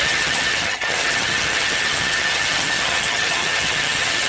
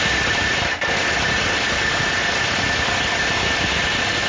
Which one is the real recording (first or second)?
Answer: second